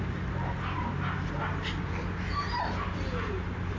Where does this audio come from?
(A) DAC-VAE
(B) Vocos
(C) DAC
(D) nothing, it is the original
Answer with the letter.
D